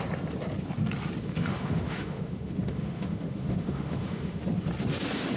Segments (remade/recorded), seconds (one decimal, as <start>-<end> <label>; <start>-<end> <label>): 0.0-1.2 recorded; 1.2-4.4 remade; 4.4-5.4 recorded